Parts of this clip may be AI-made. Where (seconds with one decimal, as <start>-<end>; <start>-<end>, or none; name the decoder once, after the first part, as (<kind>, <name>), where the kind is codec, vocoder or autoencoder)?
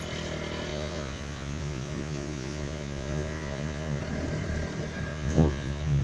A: 0.7-4.0 (vocoder, Vocos); 5.1-6.0